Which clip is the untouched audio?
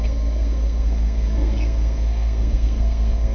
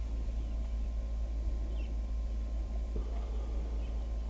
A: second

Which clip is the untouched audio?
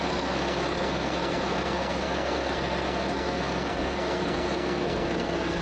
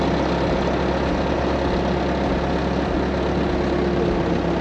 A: second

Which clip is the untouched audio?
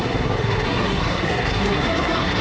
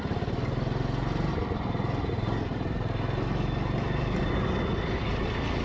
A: second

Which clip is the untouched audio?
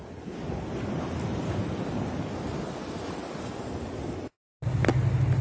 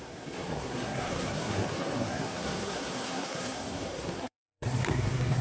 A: first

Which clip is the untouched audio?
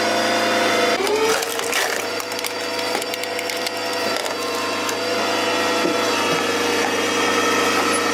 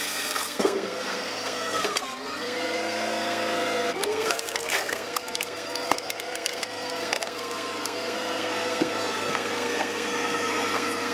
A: first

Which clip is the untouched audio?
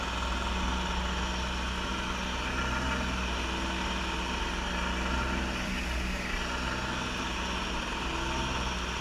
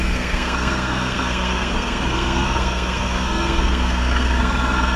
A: first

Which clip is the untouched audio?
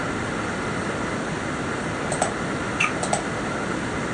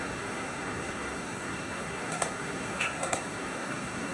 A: first